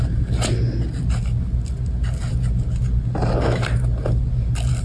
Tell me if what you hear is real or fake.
real